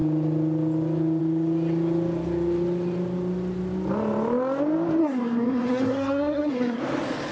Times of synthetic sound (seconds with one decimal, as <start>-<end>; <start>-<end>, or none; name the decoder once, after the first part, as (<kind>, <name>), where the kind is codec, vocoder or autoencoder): 5.0-6.8 (codec, SNAC)